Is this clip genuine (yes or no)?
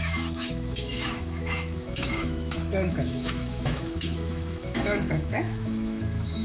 no